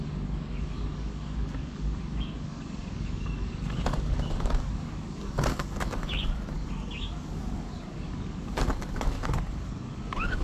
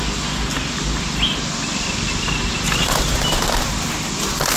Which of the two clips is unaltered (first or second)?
second